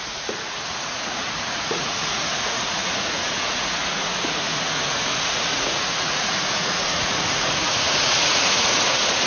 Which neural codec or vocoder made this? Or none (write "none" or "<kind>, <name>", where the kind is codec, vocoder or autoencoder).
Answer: vocoder, Vocos